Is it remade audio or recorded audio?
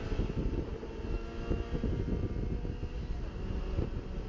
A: recorded